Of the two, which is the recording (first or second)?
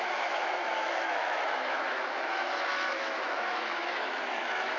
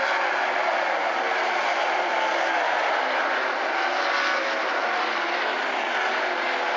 second